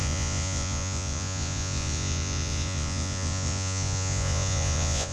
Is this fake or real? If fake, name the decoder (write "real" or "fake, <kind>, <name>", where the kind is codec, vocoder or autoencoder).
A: fake, vocoder, Vocos